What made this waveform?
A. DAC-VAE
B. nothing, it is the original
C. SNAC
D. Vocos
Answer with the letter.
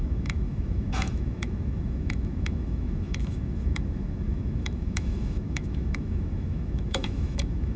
A